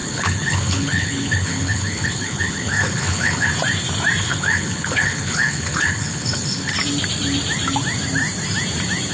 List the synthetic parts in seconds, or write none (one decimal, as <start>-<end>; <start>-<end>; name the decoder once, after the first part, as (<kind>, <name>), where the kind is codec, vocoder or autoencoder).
0.0-3.5 (codec, HILCodec); 4.2-6.7